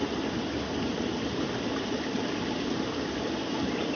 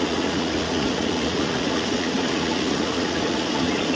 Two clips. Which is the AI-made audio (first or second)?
second